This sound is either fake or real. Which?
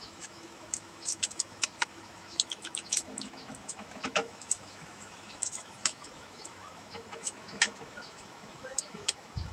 fake